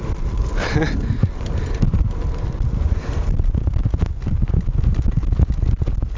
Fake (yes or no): no